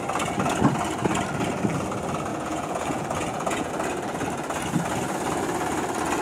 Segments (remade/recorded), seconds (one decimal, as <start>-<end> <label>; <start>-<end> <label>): 0.0-2.3 recorded; 2.3-3.7 remade; 3.7-6.2 recorded